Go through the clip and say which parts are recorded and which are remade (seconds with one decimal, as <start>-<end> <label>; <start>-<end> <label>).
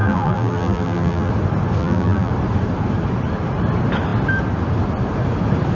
0.0-1.3 remade; 1.3-1.8 recorded; 1.8-2.3 remade; 2.3-5.7 recorded